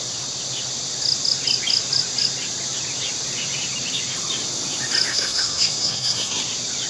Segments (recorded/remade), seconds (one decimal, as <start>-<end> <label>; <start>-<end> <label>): 0.0-5.1 recorded; 5.1-6.4 remade; 6.4-6.9 recorded